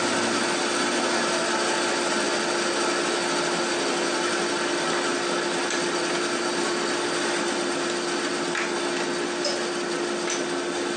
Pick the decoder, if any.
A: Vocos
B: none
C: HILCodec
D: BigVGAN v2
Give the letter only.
B